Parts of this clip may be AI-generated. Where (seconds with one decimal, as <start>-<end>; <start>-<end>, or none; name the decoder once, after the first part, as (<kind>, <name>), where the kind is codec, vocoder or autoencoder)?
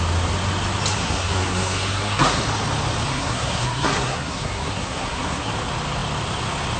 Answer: 0.9-2.4 (codec, SNAC); 3.1-5.5